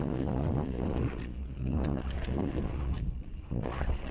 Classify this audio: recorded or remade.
remade